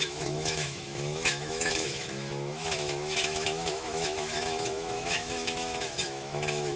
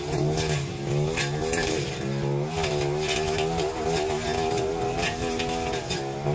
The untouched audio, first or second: second